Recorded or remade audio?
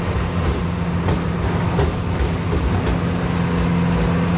recorded